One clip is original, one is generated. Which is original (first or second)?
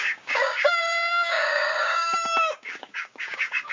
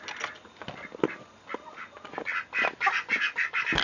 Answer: second